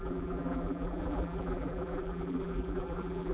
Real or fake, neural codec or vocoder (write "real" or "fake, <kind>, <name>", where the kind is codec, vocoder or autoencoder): fake, vocoder, BigVGAN v2